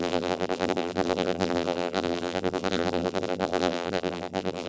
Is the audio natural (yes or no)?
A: no